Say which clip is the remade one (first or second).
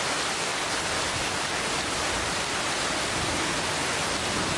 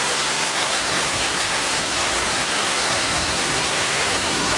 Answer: second